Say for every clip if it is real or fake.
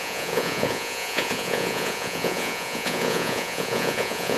fake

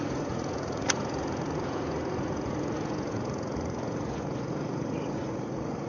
fake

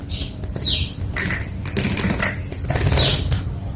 real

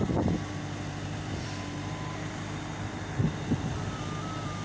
real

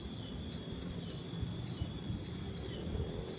real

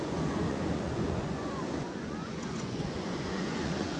fake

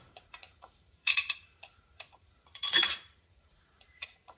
fake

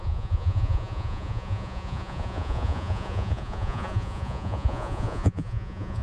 fake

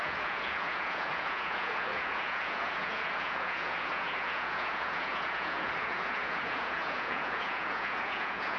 fake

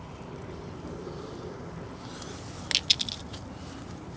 real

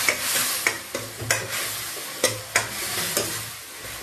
real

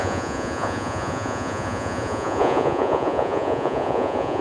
fake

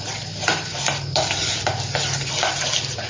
real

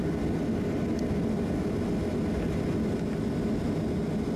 real